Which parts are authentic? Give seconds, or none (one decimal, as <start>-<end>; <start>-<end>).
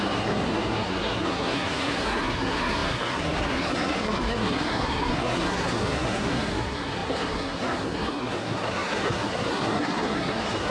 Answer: none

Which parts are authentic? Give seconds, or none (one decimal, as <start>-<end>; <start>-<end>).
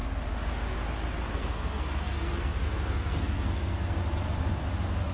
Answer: 0.0-1.3; 4.0-5.1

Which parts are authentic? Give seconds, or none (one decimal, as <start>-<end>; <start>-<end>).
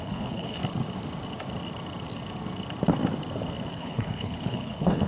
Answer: 0.6-3.7